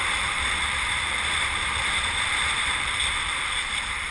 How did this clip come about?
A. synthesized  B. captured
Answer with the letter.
A